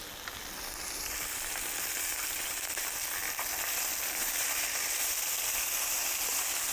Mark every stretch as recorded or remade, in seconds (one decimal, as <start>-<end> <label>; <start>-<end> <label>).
0.0-6.7 recorded